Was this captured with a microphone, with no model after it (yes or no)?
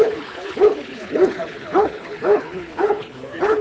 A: no